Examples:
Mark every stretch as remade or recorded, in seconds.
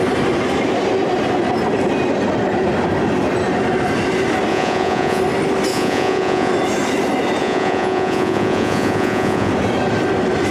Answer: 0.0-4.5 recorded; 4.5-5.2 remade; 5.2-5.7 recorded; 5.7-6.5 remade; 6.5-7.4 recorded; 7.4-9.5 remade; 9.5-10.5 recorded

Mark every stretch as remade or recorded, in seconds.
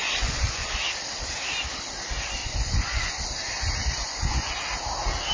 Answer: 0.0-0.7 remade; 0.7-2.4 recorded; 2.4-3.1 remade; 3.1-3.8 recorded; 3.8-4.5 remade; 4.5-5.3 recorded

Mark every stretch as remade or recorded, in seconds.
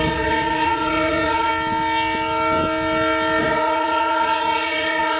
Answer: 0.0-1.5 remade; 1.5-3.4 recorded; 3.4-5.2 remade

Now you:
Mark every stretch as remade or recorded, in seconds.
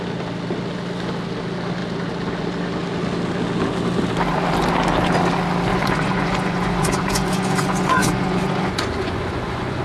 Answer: 0.0-5.7 recorded; 5.7-9.8 remade